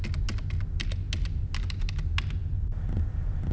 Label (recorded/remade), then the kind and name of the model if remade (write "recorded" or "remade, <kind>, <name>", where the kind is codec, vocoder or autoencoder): recorded